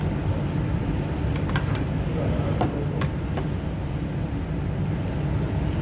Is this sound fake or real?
real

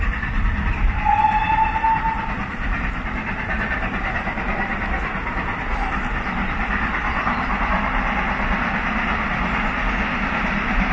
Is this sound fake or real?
real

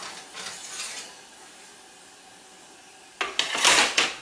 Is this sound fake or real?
real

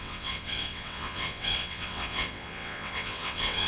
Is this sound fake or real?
fake